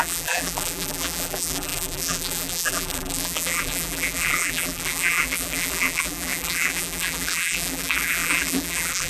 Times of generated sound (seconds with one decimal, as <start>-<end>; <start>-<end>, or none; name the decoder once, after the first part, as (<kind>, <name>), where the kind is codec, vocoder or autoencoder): 0.0-9.1 (vocoder, BigVGAN v2)